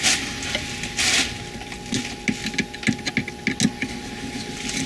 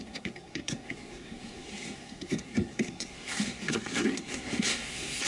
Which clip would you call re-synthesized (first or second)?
second